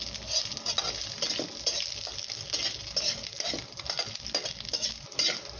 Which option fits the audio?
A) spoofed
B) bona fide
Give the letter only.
B